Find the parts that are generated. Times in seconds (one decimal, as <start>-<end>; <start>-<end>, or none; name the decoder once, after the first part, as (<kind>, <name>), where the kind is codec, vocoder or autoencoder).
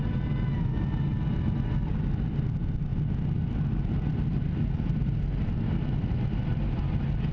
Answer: none